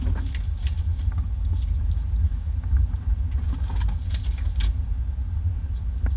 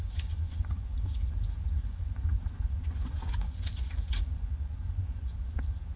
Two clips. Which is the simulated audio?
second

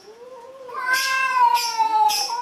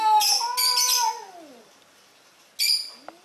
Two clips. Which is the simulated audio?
first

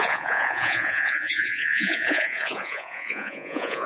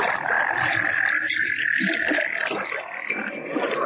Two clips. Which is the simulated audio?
first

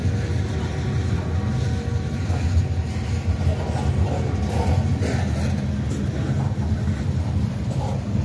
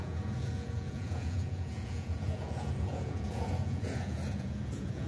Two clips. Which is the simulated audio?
second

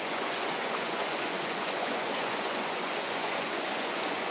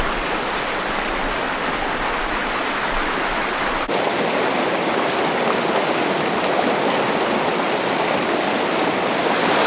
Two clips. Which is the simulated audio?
first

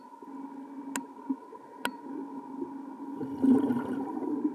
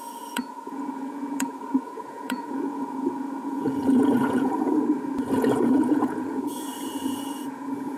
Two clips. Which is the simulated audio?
second